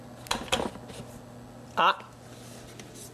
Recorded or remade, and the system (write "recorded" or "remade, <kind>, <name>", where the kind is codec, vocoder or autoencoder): recorded